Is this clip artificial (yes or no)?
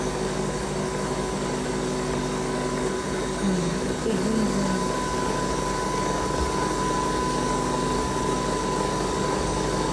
yes